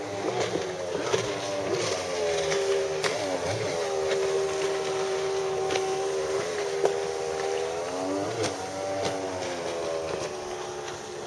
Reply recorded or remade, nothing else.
recorded